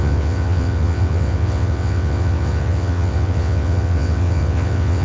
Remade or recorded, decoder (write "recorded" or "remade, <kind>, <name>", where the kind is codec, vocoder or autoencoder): remade, vocoder, WaveNeXt